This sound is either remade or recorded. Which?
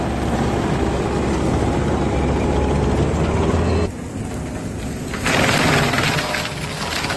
recorded